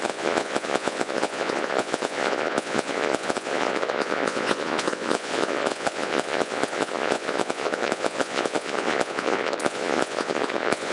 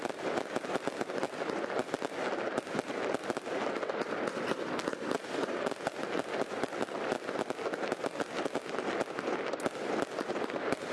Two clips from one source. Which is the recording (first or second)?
second